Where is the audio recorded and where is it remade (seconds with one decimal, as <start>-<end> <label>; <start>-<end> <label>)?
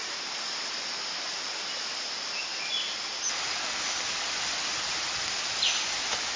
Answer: 0.0-2.5 recorded; 2.5-5.4 remade; 5.4-6.4 recorded